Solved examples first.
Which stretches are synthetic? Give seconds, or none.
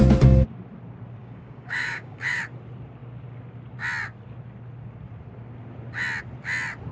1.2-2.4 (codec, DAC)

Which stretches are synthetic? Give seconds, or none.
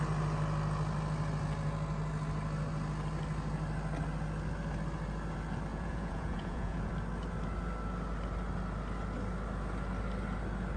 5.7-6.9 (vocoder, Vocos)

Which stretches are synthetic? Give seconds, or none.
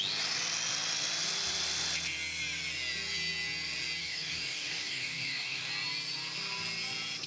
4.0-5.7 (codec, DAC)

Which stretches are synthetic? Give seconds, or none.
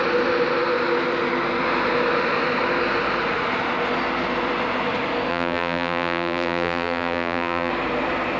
5.3-7.7 (vocoder, BigVGAN v2)